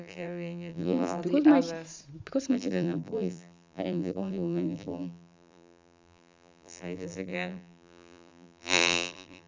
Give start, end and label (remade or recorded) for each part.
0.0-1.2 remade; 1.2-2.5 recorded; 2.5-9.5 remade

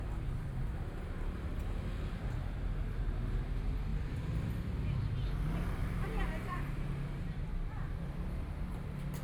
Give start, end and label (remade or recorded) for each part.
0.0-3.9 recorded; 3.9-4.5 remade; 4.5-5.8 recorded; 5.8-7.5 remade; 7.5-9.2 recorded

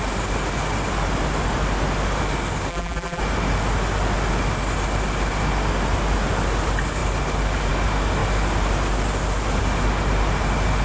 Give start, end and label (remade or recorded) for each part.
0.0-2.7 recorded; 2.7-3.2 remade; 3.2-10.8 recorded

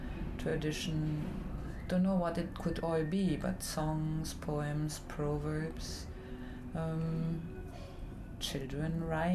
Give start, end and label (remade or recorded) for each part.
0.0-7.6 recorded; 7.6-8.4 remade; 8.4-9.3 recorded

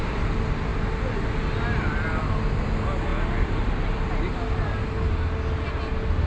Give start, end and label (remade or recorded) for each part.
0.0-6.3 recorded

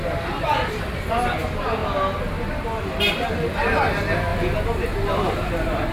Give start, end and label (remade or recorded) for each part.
0.0-4.3 recorded; 4.3-5.5 remade; 5.5-5.9 recorded